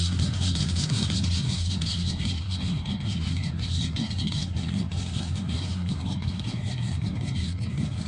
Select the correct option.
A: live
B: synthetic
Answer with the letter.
B